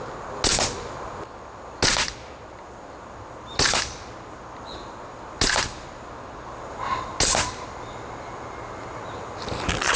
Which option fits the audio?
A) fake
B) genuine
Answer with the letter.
B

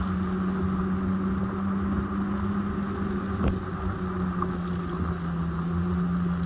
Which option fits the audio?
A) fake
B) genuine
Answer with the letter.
B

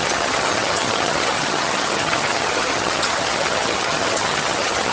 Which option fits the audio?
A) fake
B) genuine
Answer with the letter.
A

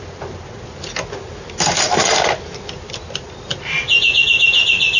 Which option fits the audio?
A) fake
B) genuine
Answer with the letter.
B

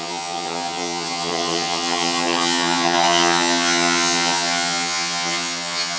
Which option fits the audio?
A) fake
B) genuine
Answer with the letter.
A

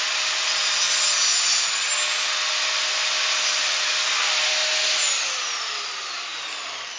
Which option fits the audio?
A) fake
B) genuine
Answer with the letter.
B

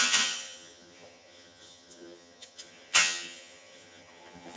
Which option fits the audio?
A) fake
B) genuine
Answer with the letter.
A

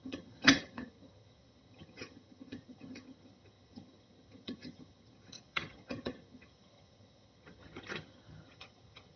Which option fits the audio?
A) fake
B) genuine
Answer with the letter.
A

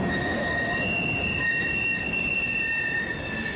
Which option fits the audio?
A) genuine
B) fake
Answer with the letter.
A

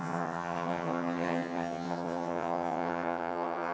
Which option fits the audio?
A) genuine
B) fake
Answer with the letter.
B